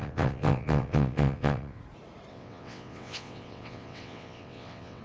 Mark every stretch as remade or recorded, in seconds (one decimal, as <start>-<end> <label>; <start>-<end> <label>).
0.0-1.8 remade; 1.8-2.3 recorded; 2.3-5.0 remade